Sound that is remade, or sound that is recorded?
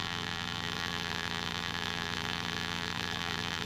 remade